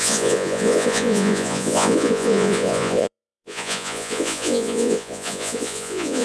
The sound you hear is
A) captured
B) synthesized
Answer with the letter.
B